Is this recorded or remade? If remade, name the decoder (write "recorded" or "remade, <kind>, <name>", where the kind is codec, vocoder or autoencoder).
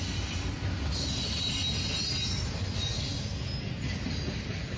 recorded